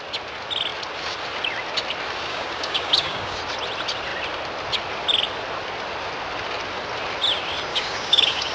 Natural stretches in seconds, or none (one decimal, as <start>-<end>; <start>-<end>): 0.0-2.3; 3.4-7.7